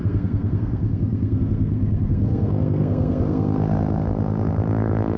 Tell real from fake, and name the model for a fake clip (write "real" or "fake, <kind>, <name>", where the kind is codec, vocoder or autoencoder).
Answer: fake, codec, SNAC